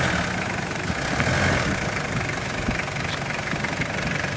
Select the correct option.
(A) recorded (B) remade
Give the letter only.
A